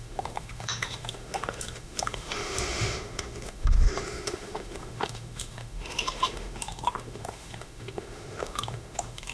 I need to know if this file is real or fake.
fake